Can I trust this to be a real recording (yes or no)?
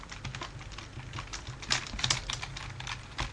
yes